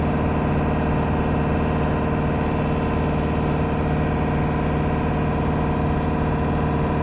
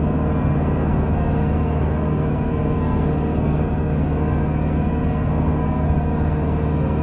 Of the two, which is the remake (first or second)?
second